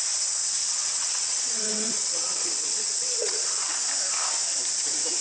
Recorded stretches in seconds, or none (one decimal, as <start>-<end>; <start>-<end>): 0.0-0.6; 3.7-5.2